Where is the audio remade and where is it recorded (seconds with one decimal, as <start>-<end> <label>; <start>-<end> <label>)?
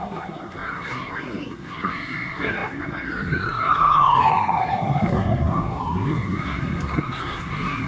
0.0-7.9 remade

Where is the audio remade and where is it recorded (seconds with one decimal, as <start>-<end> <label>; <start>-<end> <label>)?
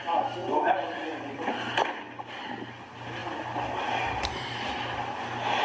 0.0-0.4 recorded; 0.4-1.5 remade; 1.5-5.6 recorded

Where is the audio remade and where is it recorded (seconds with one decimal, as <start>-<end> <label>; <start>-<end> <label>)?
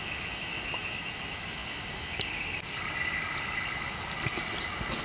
0.0-5.0 recorded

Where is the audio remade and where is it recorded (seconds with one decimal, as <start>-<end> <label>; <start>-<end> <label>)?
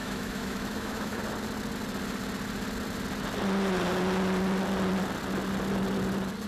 0.0-1.2 remade; 1.2-6.5 recorded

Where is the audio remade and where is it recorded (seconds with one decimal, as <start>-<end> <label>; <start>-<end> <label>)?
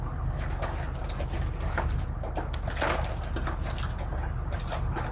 0.0-5.1 recorded